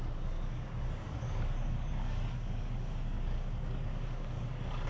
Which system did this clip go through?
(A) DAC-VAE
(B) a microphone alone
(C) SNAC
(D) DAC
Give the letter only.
D